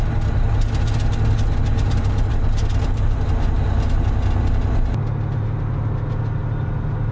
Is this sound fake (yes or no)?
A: no